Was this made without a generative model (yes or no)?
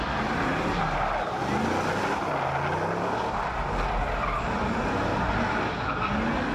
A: yes